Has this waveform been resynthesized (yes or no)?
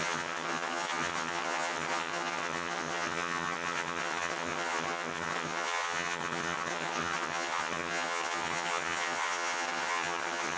yes